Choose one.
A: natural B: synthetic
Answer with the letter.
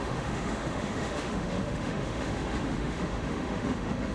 B